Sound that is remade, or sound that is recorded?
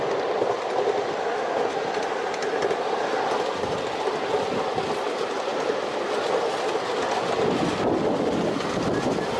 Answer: recorded